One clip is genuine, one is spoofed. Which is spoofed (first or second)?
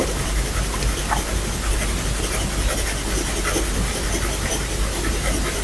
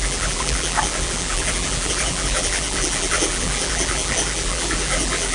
second